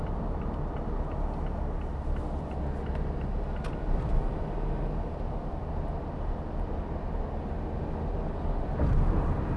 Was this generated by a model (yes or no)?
no